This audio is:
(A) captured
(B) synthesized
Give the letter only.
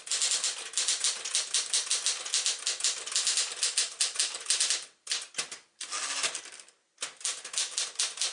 A